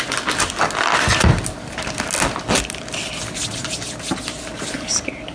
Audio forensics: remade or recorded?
recorded